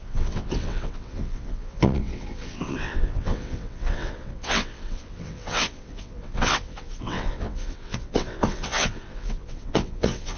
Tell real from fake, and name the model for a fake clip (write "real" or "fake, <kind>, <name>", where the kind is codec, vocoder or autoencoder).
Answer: fake, vocoder, WaveNeXt